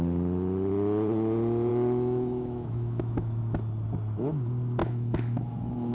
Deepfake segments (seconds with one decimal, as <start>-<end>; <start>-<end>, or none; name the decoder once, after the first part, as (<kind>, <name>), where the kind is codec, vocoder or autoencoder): 1.7-3.4 (autoencoder, DAC-VAE); 4.8-5.9